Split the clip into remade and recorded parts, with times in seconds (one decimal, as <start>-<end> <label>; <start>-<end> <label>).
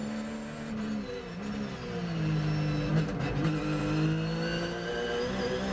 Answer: 0.0-5.7 recorded